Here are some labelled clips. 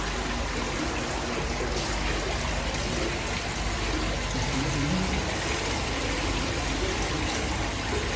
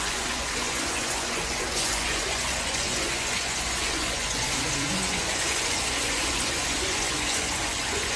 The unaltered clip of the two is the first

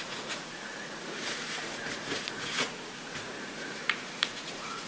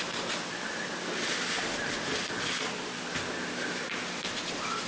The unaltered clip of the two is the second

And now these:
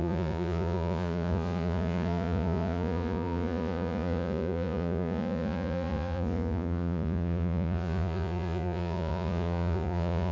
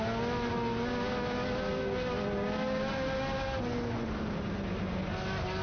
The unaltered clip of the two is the second